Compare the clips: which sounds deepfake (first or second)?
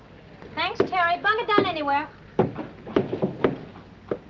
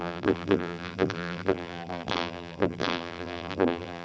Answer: second